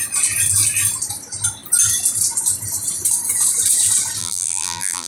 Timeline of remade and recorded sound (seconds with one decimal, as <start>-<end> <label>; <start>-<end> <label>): 0.0-4.2 recorded; 4.2-5.1 remade